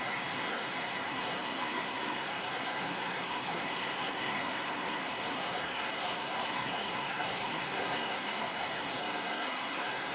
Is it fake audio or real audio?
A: fake